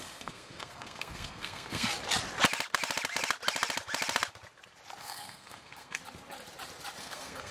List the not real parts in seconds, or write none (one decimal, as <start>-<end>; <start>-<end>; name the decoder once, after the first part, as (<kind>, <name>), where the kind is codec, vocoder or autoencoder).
0.0-1.9 (codec, SNAC); 5.0-6.0; 7.0-7.5